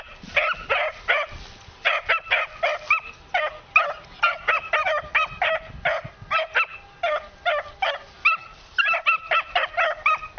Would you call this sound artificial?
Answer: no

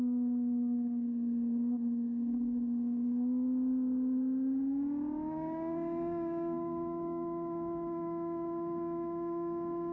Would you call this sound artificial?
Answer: yes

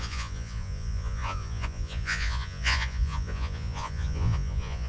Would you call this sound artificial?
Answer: yes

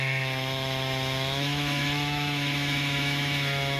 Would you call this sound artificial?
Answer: yes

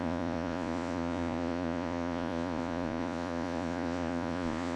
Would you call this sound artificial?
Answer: yes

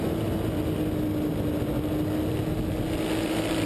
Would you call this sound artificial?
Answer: no